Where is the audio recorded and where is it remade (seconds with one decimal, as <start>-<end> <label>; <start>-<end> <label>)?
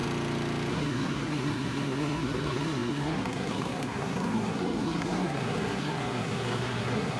0.0-0.7 recorded; 0.7-7.2 remade